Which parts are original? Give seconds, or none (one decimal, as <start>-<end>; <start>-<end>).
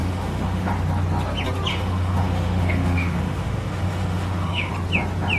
0.7-1.7; 4.7-5.4